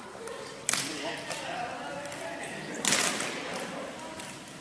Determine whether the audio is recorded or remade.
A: recorded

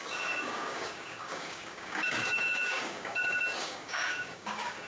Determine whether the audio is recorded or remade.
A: remade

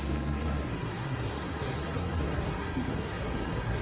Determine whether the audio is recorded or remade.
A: remade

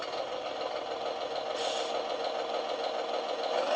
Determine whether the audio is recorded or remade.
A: recorded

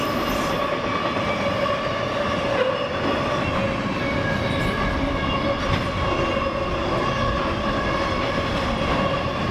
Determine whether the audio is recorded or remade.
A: recorded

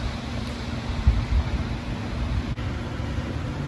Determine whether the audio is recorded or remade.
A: recorded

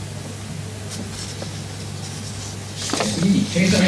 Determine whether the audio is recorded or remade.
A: recorded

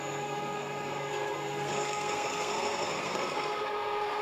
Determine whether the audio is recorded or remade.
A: remade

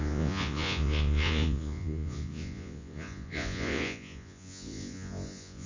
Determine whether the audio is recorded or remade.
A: remade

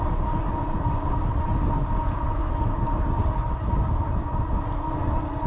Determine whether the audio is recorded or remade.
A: recorded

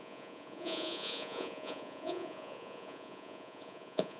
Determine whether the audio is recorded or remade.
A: remade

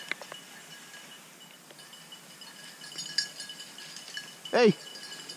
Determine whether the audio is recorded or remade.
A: recorded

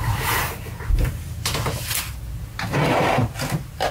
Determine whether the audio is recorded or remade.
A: recorded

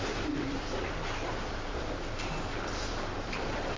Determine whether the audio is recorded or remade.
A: remade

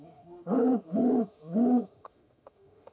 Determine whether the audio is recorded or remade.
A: remade